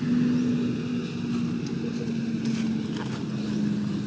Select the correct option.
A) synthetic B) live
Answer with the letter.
B